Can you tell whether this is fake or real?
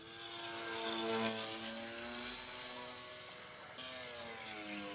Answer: real